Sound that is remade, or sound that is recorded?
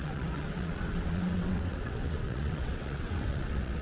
remade